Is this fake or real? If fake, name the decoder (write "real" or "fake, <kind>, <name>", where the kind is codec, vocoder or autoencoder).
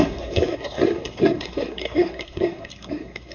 fake, codec, SNAC